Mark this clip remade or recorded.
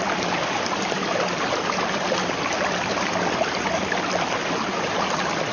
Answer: recorded